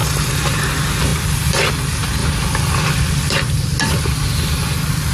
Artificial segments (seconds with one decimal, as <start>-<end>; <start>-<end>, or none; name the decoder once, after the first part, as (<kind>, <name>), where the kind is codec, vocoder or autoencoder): none